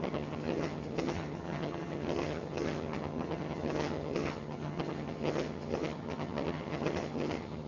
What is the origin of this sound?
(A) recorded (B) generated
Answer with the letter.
B